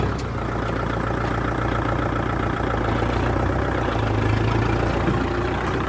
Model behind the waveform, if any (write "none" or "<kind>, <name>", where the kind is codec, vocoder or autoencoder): none